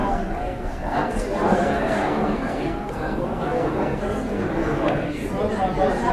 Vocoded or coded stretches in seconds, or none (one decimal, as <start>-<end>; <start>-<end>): 0.0-5.2